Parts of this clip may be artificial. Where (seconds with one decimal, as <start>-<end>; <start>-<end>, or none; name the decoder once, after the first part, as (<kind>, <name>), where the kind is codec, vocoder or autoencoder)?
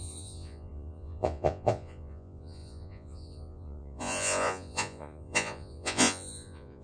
0.0-6.8 (vocoder, Vocos)